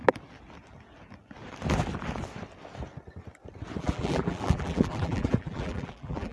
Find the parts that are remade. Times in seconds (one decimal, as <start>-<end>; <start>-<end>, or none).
3.8-6.3